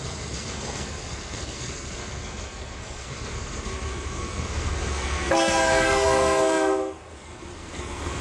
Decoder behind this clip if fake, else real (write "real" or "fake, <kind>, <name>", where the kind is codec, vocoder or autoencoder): fake, codec, SNAC